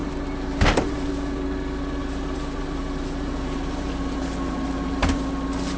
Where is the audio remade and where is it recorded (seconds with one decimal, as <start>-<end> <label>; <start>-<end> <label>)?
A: 0.0-1.1 remade; 1.1-2.0 recorded; 2.0-5.2 remade; 5.2-5.8 recorded